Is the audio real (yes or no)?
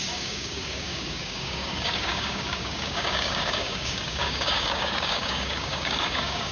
no